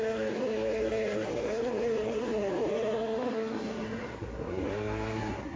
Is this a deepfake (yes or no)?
yes